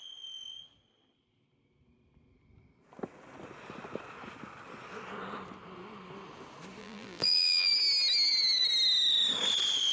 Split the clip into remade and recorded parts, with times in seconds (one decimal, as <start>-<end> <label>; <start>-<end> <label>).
0.0-6.8 recorded; 6.8-7.7 remade; 7.7-9.9 recorded

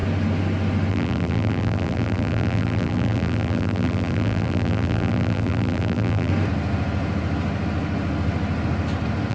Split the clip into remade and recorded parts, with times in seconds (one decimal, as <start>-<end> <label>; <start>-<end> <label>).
0.0-0.9 recorded; 0.9-6.3 remade; 6.3-9.3 recorded

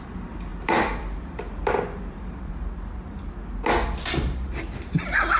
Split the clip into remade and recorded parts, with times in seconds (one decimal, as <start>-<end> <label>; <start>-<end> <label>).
0.0-0.5 recorded; 0.5-3.3 remade; 3.3-5.4 recorded

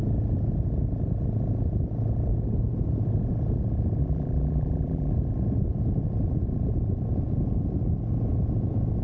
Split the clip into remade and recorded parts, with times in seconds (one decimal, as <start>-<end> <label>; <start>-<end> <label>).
0.0-4.0 recorded; 4.0-5.1 remade; 5.1-9.0 recorded

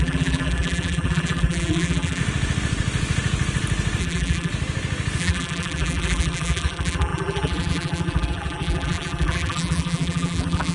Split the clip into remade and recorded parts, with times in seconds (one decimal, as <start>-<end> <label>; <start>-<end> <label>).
0.0-2.2 remade; 2.2-4.0 recorded; 4.0-4.5 remade; 4.5-5.2 recorded; 5.2-10.7 remade